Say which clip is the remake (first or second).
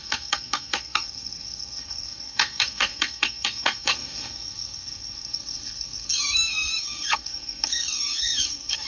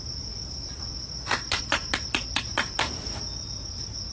first